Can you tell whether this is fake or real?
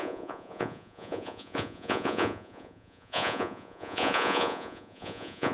fake